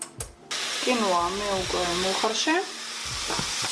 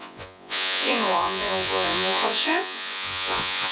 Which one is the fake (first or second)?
second